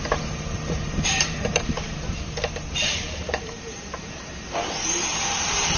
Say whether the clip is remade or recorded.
remade